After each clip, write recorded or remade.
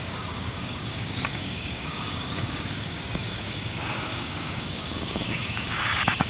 remade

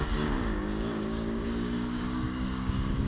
remade